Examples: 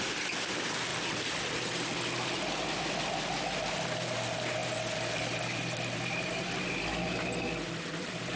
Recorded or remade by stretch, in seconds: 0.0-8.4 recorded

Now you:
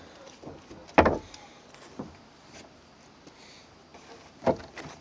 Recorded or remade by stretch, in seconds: 0.0-3.9 recorded; 3.9-5.0 remade

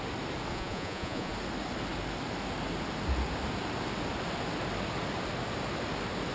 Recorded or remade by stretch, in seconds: 0.0-0.5 recorded; 0.5-1.3 remade; 1.3-6.3 recorded

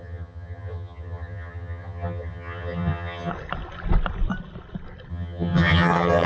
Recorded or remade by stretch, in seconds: 0.0-3.3 remade; 3.3-5.1 recorded; 5.1-6.3 remade